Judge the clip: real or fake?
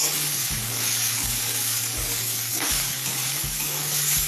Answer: fake